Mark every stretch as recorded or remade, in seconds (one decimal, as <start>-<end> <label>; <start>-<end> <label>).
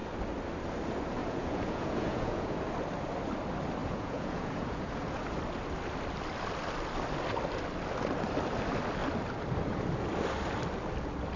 0.0-1.2 recorded; 1.2-2.6 remade; 2.6-3.8 recorded; 3.8-5.2 remade; 5.2-11.4 recorded